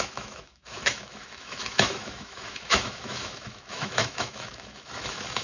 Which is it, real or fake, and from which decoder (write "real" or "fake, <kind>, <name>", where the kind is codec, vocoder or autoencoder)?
fake, autoencoder, DAC-VAE